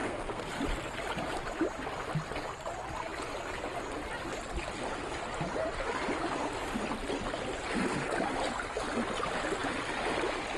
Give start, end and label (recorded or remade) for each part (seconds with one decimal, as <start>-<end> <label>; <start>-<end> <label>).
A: 0.0-0.5 remade; 0.5-10.6 recorded